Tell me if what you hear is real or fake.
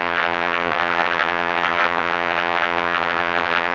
fake